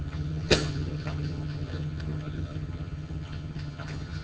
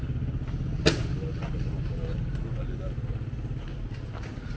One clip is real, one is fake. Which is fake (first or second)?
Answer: first